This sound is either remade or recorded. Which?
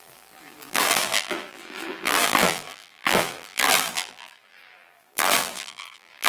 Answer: remade